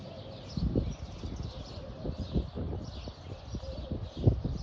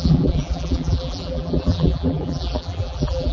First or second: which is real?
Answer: first